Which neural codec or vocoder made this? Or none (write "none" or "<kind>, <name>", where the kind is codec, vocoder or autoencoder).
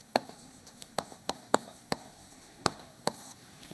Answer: codec, SNAC